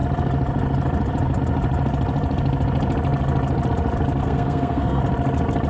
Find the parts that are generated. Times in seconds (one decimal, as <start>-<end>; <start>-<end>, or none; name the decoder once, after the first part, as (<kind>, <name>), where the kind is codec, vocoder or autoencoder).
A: 4.2-5.0 (codec, SNAC)